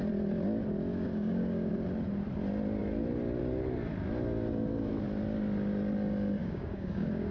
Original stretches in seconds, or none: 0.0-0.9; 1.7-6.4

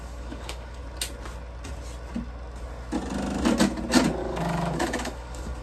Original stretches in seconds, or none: 0.8-4.2

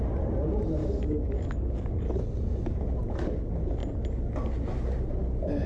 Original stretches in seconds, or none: 0.0-0.8; 2.2-5.7

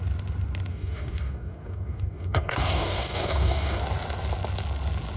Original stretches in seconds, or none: 0.0-0.7; 3.8-5.2

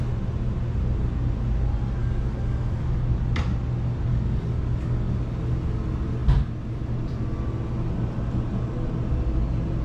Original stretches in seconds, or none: 0.0-2.0; 3.2-4.1; 5.1-9.8